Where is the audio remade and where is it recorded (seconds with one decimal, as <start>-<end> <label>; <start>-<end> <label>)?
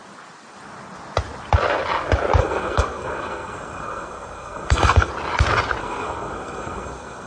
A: 0.0-2.4 recorded; 2.4-5.1 remade; 5.1-5.8 recorded; 5.8-7.3 remade